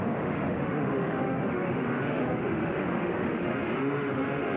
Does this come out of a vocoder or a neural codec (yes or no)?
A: yes